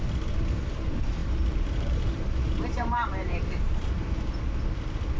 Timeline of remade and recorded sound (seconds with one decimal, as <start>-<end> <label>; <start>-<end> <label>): 0.0-1.2 recorded; 1.2-4.1 remade; 4.1-5.2 recorded